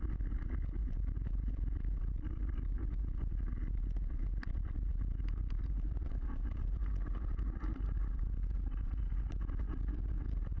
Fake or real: real